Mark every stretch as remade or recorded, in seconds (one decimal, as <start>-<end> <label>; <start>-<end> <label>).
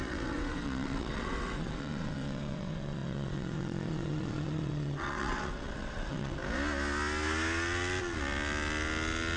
0.0-6.4 remade; 6.4-9.4 recorded